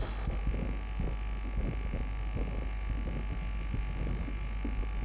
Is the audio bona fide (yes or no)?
yes